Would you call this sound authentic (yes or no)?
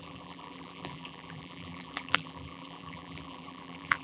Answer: no